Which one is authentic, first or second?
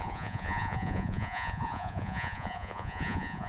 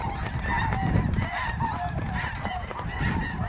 second